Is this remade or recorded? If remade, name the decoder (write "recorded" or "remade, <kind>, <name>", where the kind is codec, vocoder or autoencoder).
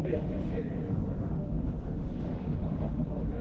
remade, autoencoder, DAC-VAE